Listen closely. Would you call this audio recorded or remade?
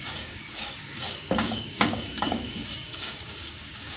remade